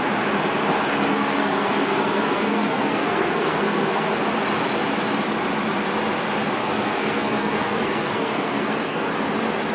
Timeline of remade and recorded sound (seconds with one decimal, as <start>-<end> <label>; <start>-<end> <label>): 0.0-1.1 recorded; 1.1-4.2 remade; 4.2-6.6 recorded; 6.6-9.1 remade; 9.1-9.7 recorded